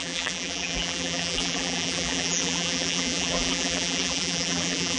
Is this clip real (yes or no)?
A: no